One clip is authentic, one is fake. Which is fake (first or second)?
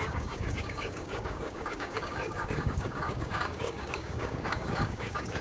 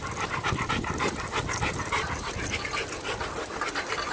first